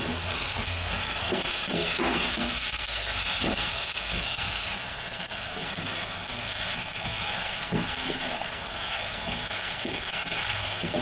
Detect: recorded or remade remade